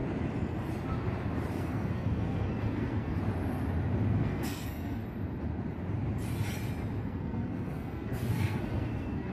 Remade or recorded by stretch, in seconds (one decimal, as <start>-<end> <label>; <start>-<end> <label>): 0.0-1.5 recorded; 1.5-3.2 remade; 3.2-4.1 recorded; 4.1-5.0 remade; 5.0-7.0 recorded; 7.0-9.3 remade